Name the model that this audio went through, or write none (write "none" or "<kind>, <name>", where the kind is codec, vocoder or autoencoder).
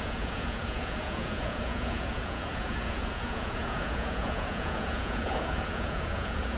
vocoder, Vocos